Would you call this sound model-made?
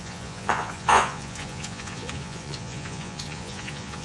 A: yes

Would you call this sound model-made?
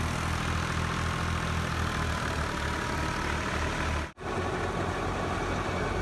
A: no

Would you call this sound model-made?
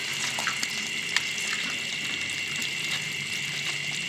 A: no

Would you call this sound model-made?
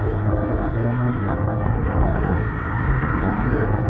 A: yes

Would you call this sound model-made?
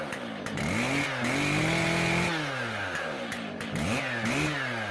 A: no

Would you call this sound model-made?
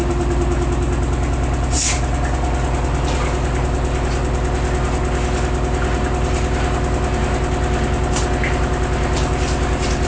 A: no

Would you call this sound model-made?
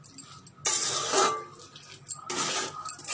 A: no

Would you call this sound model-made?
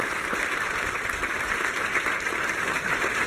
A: yes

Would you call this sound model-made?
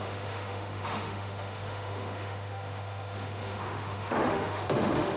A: yes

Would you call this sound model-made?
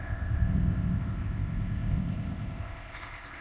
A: yes